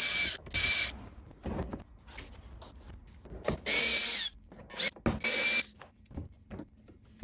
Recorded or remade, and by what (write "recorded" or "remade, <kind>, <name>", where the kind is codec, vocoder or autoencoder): recorded